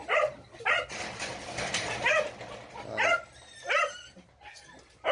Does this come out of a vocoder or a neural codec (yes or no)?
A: no